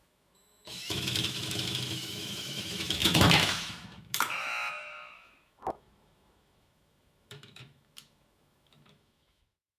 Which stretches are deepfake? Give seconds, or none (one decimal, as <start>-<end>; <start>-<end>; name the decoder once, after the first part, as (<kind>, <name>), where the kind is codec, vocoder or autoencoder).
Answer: 0.0-9.8 (autoencoder, DAC-VAE)